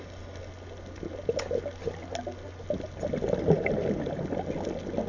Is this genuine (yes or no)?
yes